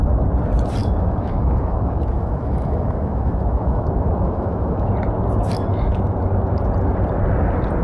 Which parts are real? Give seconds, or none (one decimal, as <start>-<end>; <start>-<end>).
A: 0.0-0.8; 4.9-7.8